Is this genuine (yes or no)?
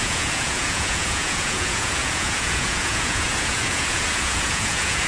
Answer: no